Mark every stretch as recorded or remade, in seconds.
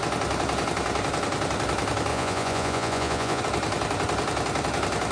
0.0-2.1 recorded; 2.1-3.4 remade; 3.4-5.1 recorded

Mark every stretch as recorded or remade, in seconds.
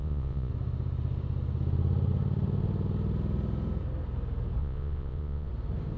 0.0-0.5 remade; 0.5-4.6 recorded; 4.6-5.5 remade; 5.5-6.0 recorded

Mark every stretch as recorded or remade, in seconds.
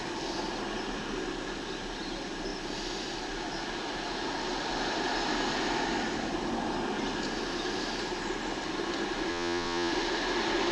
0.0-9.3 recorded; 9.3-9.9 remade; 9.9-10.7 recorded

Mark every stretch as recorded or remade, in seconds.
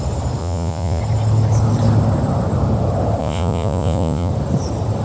0.0-0.4 recorded; 0.4-1.0 remade; 1.0-3.2 recorded; 3.2-4.3 remade; 4.3-5.0 recorded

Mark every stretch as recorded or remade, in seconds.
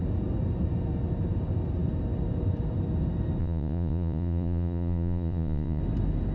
0.0-3.4 recorded; 3.4-5.8 remade; 5.8-6.3 recorded